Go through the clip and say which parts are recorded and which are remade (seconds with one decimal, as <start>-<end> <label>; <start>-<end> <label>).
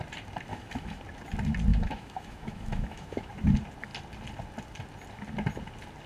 0.0-0.5 recorded; 0.5-1.0 remade; 1.0-1.7 recorded; 1.7-3.3 remade; 3.3-6.1 recorded